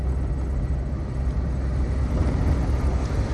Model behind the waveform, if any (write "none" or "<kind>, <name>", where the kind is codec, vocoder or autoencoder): none